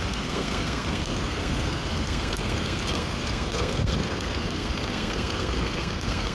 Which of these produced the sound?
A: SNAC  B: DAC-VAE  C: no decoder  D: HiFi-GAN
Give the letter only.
A